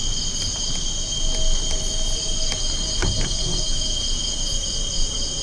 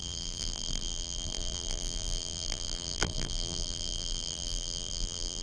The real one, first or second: first